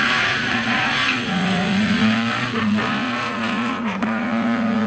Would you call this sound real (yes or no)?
no